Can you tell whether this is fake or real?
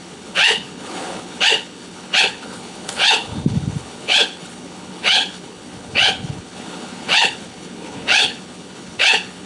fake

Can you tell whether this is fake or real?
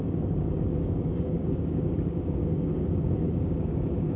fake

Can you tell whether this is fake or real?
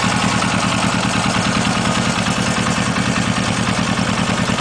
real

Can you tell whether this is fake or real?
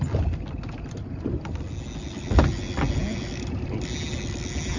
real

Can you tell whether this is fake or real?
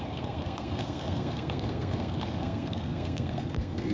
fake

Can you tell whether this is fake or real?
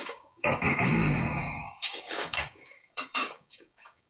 fake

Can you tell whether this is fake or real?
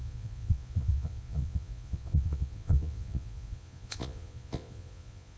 fake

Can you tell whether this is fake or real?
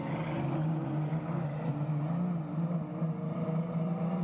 real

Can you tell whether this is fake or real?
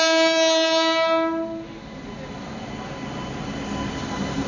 real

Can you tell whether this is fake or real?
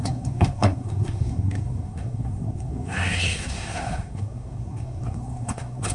fake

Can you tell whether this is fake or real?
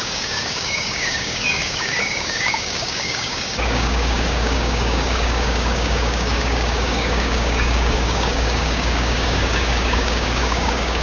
fake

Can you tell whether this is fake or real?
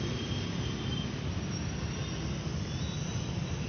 real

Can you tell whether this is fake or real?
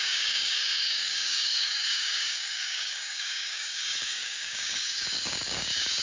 fake